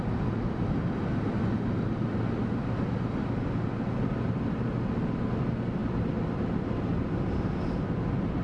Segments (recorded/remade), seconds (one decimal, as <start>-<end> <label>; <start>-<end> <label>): 0.0-8.4 recorded